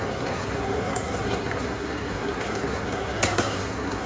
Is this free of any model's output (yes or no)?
no